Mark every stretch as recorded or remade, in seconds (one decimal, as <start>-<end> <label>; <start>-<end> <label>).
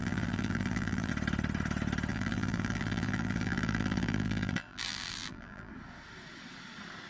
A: 0.0-1.1 remade; 1.1-2.1 recorded; 2.1-5.7 remade; 5.7-7.1 recorded